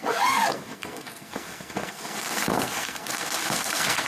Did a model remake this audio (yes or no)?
yes